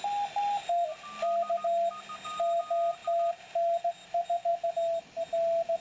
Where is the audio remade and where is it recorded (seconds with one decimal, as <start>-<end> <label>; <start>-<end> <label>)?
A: 0.0-5.8 recorded